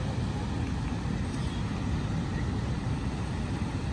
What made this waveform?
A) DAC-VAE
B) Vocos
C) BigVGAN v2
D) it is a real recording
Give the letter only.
D